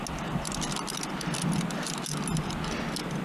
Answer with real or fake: real